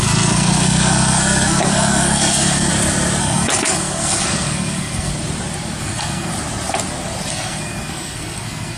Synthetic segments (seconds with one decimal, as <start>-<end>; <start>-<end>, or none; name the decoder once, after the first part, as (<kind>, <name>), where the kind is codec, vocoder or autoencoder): 0.0-2.7 (codec, SNAC); 3.2-5.1; 5.8-6.3; 7.3-8.8